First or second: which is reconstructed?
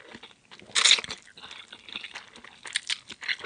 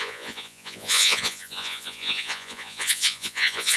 second